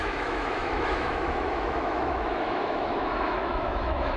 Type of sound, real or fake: fake